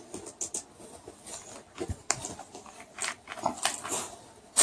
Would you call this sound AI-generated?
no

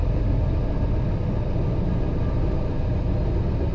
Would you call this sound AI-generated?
no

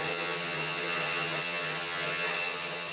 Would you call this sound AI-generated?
yes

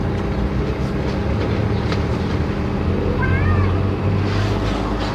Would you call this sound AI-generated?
no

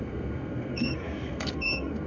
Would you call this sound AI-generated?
yes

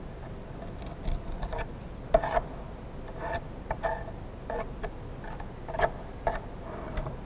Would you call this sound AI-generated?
no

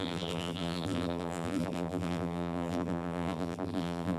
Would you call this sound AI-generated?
yes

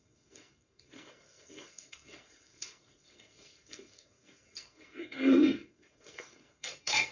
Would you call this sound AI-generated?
yes